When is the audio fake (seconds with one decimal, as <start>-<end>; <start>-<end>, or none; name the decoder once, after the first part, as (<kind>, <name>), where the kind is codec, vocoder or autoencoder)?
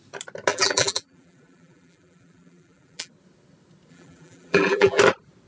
0.5-3.1 (vocoder, BigVGAN v2); 3.9-5.0